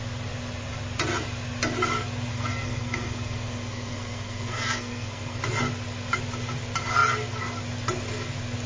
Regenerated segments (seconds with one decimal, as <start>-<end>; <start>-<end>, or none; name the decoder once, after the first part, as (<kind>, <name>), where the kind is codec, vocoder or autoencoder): 2.3-5.4 (codec, SNAC)